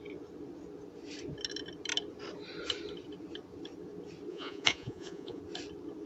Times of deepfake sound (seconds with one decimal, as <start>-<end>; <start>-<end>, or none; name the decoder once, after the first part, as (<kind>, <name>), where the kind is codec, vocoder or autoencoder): 4.3-5.4 (vocoder, Vocos)